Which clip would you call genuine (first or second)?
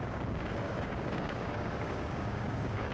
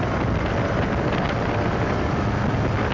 second